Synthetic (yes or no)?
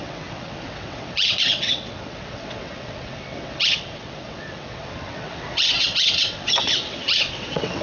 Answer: yes